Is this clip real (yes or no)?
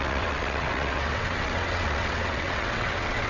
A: no